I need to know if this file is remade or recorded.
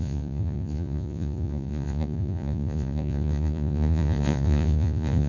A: remade